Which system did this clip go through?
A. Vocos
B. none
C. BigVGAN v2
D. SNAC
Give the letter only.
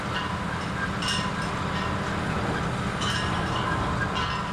B